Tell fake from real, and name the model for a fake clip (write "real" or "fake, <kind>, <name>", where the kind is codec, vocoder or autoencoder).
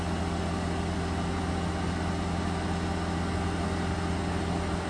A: real